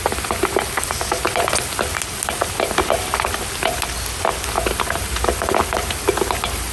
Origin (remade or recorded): recorded